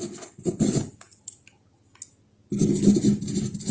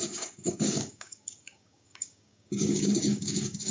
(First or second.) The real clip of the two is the first